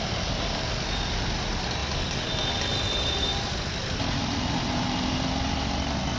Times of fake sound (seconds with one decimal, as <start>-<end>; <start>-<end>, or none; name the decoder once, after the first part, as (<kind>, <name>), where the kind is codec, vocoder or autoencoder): none